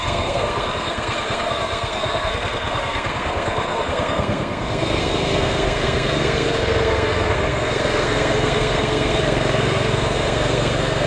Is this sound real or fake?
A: fake